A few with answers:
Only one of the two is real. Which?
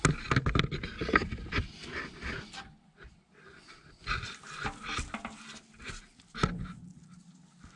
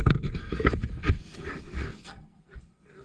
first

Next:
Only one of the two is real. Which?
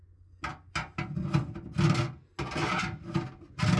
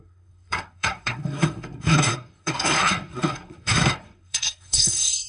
first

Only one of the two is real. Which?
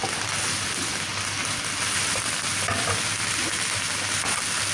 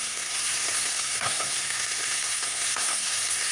first